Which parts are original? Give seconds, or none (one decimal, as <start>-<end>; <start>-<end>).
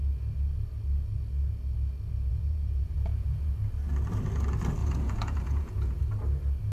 0.0-2.3; 3.5-4.8; 6.0-6.7